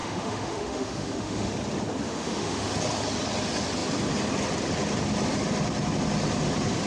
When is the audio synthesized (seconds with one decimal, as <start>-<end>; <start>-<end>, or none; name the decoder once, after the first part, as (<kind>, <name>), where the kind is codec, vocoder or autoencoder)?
0.0-1.5 (autoencoder, DAC-VAE); 2.1-2.7